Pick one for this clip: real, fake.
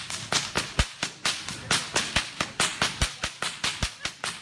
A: real